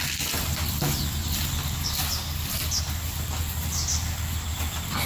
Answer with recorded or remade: recorded